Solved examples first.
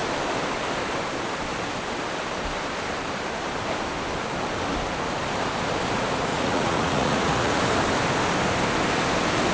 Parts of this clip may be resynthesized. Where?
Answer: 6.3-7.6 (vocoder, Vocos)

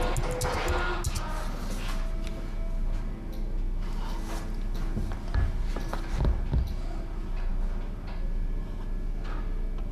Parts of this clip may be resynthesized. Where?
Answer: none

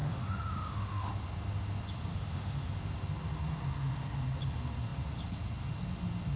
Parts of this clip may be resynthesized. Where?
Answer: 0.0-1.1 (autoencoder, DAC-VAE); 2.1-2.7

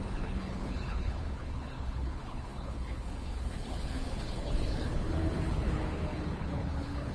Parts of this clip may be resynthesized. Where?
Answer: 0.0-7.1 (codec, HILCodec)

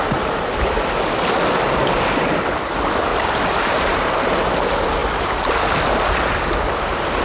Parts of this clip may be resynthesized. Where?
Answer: none

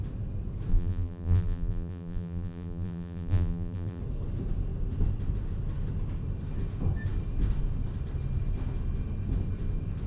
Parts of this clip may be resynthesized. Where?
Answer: 0.7-4.0 (vocoder, BigVGAN v2)